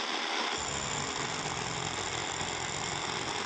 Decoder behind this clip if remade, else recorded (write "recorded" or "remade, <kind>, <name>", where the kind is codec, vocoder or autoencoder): recorded